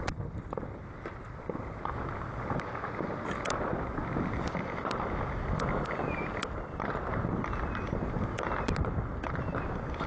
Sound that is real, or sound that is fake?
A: real